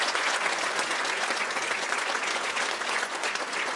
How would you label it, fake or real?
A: fake